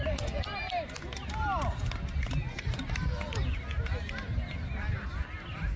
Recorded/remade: recorded